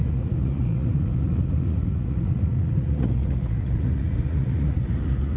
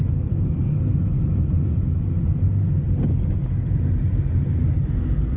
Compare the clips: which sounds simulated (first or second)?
first